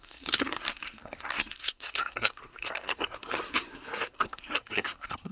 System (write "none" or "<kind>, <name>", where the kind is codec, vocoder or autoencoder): codec, SNAC